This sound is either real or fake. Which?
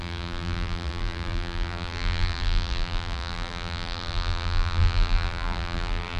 fake